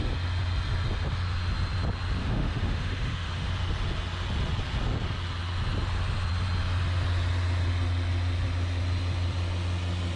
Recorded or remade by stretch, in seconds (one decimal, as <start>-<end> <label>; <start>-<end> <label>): 0.0-2.2 recorded; 2.2-3.5 remade; 3.5-10.2 recorded